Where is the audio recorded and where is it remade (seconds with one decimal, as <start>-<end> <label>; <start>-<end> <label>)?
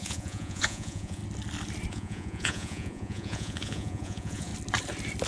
0.0-1.2 remade; 1.2-1.9 recorded; 1.9-4.5 remade; 4.5-5.3 recorded